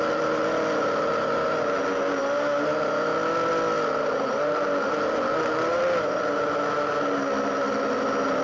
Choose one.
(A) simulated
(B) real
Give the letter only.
B